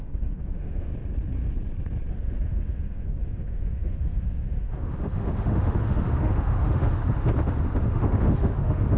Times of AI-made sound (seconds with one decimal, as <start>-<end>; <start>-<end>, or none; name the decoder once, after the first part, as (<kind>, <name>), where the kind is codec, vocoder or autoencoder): 0.0-0.9 (autoencoder, DAC-VAE); 2.1-7.0; 7.8-9.0